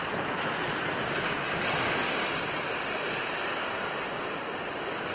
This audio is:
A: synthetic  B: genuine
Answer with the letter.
B